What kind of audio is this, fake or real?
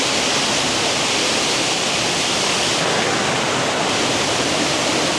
real